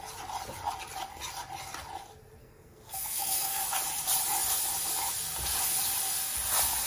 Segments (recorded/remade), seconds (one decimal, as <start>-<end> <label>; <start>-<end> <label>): 0.0-2.4 recorded; 2.4-3.6 remade; 3.6-6.9 recorded